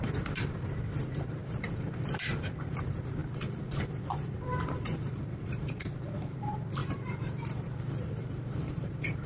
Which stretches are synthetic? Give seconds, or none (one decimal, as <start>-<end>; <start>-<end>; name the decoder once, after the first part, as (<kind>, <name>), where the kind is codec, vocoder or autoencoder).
0.0-9.3 (vocoder, BigVGAN v2)